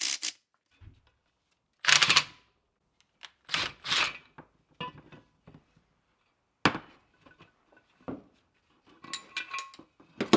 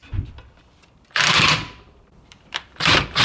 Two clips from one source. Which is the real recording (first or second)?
first